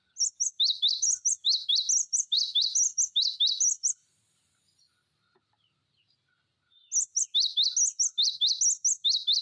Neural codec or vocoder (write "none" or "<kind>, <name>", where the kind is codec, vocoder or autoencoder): none